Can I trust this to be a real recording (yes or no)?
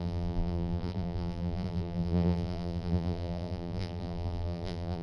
no